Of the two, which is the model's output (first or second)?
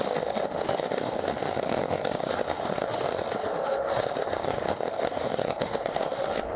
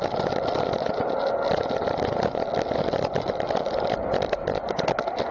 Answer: first